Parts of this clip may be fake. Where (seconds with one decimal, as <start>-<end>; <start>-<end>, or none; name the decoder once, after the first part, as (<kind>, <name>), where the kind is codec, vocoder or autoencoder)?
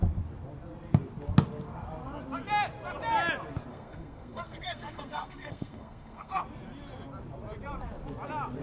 3.7-6.4 (codec, SNAC)